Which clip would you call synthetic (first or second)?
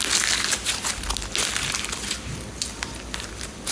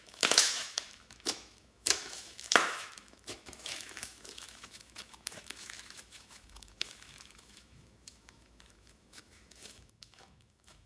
second